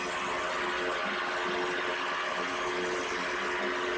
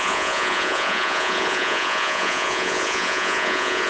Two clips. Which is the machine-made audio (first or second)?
second